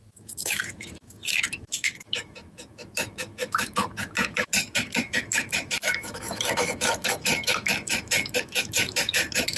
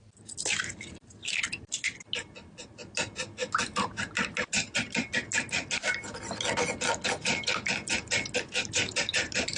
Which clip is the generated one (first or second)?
first